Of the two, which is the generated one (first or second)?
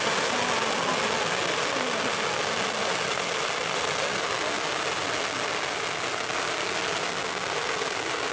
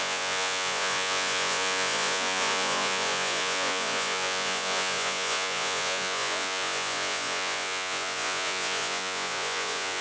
second